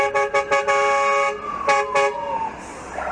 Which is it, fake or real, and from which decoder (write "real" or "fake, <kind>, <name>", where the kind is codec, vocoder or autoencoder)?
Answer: real